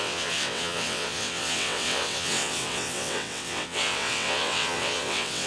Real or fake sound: fake